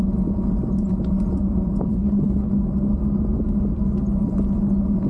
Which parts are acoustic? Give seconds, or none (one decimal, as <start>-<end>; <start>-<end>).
0.0-1.9; 2.5-5.1